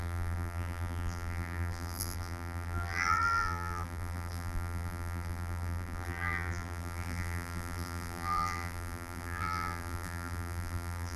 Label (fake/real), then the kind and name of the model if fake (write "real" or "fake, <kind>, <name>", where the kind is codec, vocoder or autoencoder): fake, vocoder, BigVGAN v2